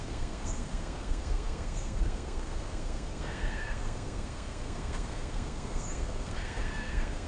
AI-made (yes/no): yes